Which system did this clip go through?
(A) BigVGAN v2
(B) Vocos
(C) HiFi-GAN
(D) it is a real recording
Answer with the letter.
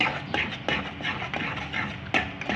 D